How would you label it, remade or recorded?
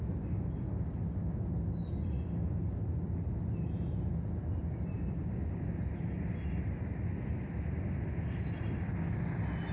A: recorded